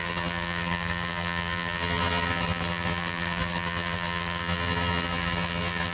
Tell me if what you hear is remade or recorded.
remade